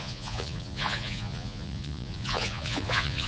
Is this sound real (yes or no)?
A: no